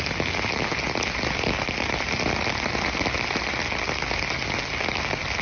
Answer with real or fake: real